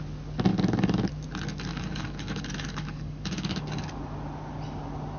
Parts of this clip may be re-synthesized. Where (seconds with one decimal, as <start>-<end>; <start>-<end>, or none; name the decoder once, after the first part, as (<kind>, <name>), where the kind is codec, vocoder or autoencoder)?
0.5-1.1 (codec, DAC); 1.7-4.0